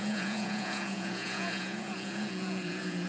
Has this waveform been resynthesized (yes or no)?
yes